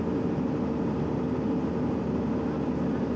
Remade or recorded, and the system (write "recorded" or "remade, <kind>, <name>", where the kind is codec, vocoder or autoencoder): recorded